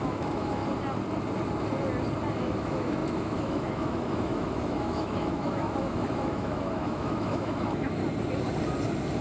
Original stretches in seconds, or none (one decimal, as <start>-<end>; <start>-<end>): 0.6-2.3; 8.0-9.2